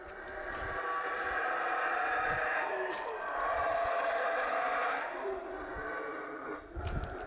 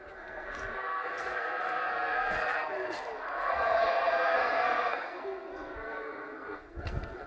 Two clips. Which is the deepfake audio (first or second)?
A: second